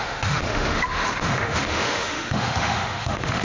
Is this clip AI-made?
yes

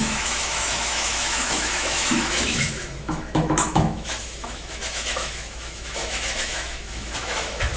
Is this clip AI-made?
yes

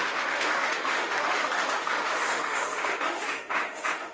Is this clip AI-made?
yes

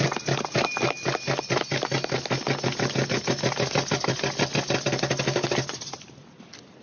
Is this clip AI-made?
no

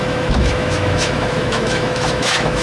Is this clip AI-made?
yes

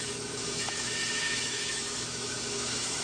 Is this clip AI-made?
yes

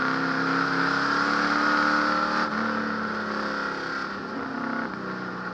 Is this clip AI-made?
no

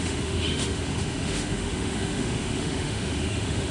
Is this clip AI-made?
yes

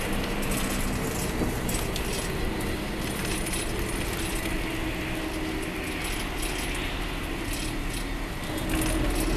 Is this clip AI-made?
no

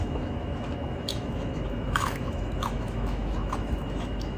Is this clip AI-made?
yes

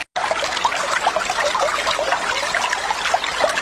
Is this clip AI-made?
no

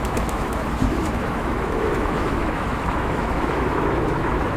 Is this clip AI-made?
yes